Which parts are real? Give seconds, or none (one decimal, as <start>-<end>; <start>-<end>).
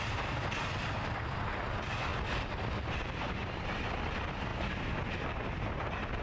2.1-2.8; 4.5-6.2